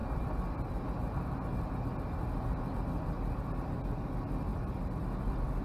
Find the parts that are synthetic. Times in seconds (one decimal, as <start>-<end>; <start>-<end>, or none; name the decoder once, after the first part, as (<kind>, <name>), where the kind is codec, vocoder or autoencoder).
4.5-5.6 (vocoder, BigVGAN v2)